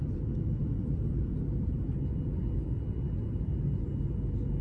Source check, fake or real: real